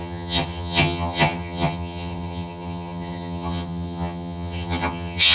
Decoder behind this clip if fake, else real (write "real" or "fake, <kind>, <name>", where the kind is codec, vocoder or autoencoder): fake, vocoder, HiFi-GAN